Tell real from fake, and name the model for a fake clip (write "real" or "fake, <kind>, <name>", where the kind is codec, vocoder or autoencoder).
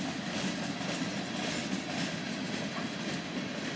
real